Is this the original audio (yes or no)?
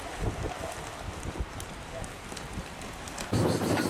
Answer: yes